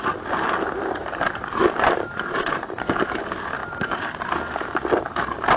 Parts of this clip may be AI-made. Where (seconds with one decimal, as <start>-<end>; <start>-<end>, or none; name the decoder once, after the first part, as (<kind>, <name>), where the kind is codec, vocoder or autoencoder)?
1.0-3.2 (vocoder, BigVGAN v2); 3.6-4.3

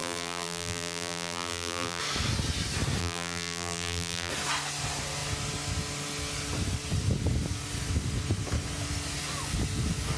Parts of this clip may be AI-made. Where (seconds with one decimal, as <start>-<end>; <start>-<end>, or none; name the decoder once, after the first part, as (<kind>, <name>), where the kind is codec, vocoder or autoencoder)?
0.0-2.0 (vocoder, BigVGAN v2); 3.0-4.3

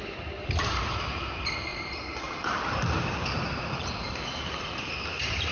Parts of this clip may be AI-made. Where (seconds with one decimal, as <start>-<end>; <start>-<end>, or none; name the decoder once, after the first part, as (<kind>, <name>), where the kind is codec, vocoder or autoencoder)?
0.0-5.5 (vocoder, BigVGAN v2)

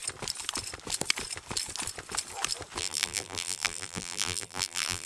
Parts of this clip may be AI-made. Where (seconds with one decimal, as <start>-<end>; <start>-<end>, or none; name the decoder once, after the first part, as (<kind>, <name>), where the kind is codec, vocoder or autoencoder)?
2.8-5.1 (vocoder, BigVGAN v2)

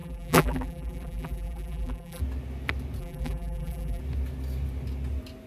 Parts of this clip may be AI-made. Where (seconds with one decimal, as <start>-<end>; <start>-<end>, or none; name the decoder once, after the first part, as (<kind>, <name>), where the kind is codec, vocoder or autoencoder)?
0.0-2.2 (vocoder, BigVGAN v2); 3.0-4.0